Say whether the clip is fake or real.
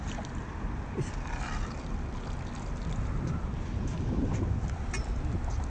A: real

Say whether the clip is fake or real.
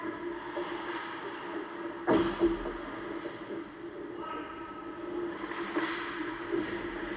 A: real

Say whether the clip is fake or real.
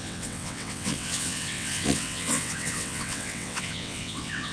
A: fake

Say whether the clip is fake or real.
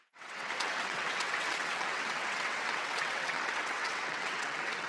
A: fake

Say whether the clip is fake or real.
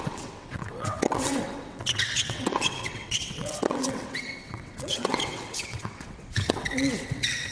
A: fake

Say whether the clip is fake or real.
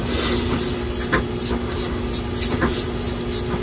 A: real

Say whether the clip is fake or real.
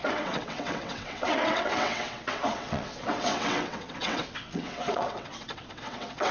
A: fake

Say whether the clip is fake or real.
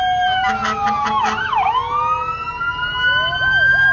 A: real